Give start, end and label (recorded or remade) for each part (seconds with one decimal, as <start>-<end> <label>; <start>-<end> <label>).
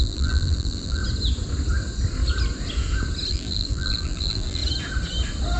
0.0-1.0 remade; 1.0-3.3 recorded; 3.3-4.6 remade; 4.6-5.6 recorded